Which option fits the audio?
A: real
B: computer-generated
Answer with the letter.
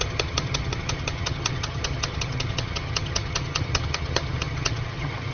B